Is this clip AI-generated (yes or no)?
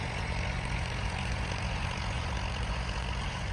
yes